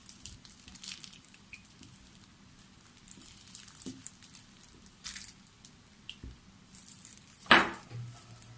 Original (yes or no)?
no